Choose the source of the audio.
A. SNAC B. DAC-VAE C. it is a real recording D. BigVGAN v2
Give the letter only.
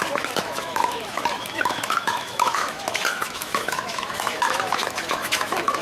B